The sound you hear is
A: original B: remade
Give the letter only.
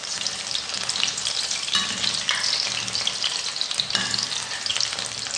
A